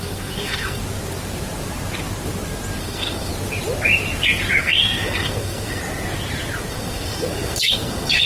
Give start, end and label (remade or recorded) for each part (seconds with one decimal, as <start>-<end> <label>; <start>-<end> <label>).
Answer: 0.0-0.8 remade; 0.8-2.8 recorded; 2.8-3.3 remade; 3.3-4.6 recorded; 4.6-5.8 remade; 5.8-6.7 recorded; 6.7-8.3 remade